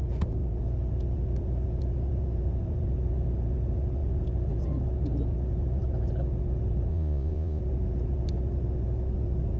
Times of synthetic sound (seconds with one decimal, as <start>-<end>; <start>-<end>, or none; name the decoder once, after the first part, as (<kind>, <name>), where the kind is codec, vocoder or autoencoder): 6.9-7.6 (vocoder, Vocos)